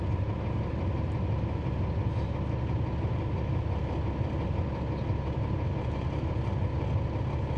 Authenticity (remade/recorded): recorded